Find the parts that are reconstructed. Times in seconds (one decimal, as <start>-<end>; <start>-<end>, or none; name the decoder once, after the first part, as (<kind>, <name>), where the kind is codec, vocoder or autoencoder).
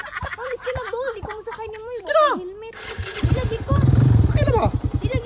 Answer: none